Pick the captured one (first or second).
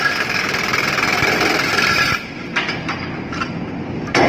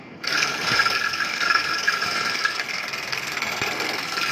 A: first